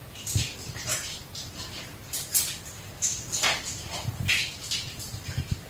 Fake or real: real